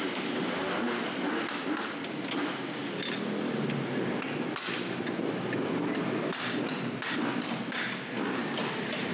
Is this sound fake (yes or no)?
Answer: no